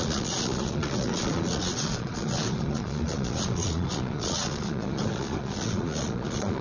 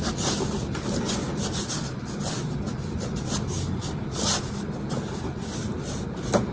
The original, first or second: second